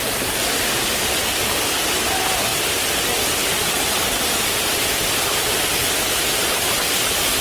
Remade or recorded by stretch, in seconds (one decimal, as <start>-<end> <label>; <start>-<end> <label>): 0.0-2.5 recorded; 2.5-3.2 remade; 3.2-7.4 recorded